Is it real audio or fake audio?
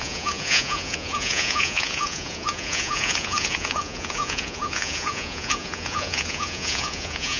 fake